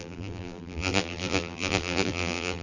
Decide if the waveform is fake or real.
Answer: fake